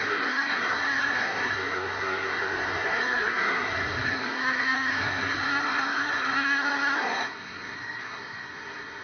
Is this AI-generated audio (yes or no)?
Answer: yes